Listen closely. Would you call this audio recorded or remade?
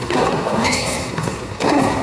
remade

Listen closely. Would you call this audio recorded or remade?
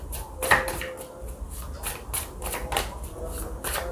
remade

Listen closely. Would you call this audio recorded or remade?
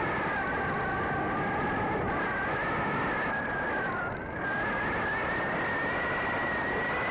recorded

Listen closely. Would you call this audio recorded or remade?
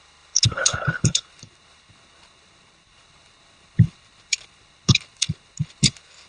remade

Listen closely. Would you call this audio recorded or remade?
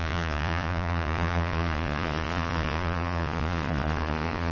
remade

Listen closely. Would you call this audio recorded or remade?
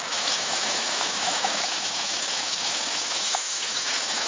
remade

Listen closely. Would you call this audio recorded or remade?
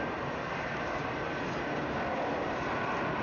recorded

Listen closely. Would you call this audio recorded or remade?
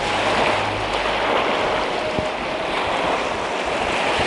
recorded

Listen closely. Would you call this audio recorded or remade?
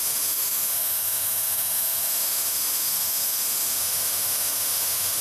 remade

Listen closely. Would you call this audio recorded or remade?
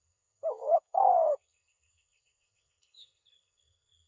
remade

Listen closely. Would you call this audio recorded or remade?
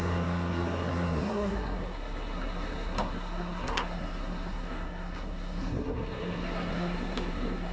remade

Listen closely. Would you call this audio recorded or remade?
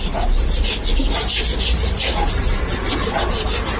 recorded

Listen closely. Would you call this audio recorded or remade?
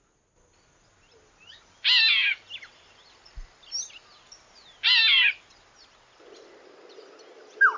recorded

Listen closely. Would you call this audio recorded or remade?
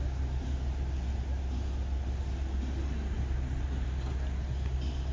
recorded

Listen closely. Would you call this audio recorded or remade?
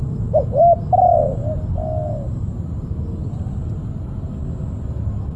recorded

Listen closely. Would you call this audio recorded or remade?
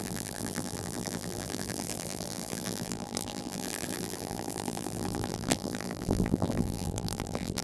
remade